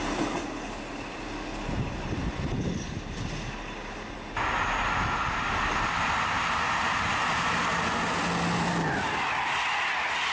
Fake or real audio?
real